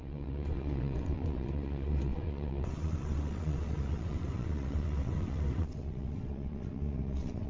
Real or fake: fake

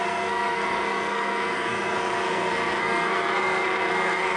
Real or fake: fake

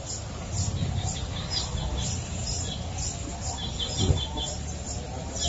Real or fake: real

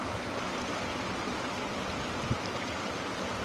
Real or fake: real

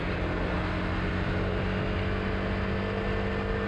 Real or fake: real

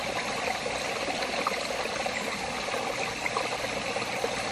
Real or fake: real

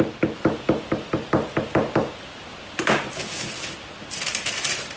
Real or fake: real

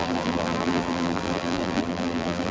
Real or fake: fake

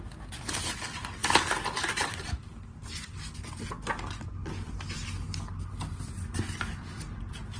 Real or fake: real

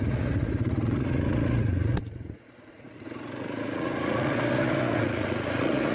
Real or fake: fake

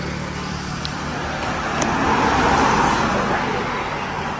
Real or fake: real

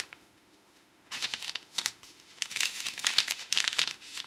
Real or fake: fake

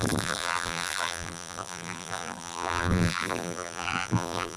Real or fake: fake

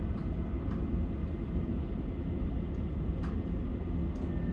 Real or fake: real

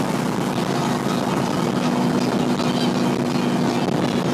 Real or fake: real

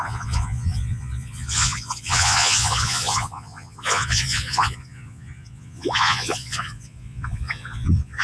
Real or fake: fake